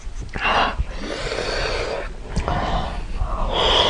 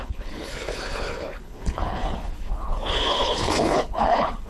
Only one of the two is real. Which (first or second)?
first